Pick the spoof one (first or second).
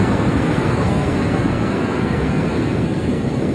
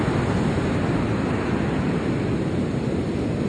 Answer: first